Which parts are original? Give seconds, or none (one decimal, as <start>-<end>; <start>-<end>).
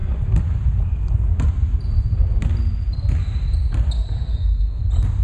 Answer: 0.0-4.3; 4.8-5.2